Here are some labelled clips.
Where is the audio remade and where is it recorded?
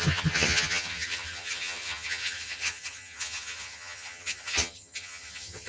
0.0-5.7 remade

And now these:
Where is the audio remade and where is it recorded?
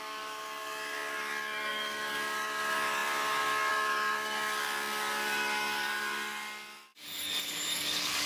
0.0-8.3 remade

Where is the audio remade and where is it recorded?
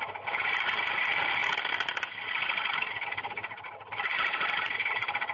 0.0-1.4 remade; 1.4-3.9 recorded; 3.9-5.3 remade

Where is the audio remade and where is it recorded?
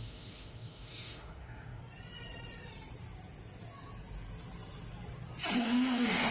0.0-1.8 remade; 1.8-5.6 recorded; 5.6-6.3 remade